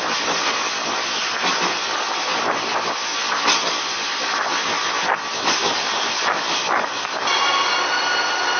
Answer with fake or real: real